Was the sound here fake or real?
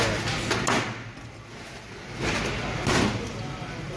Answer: real